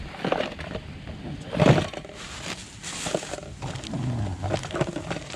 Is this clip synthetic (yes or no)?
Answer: no